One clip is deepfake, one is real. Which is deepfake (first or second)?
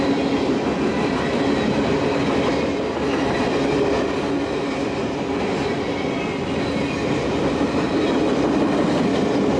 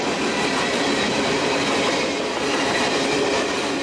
second